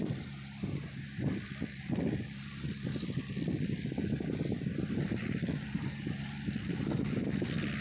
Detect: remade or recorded remade